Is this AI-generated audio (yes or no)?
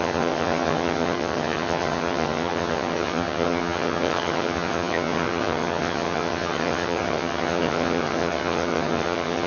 yes